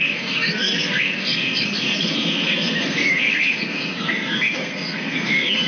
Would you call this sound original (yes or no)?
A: no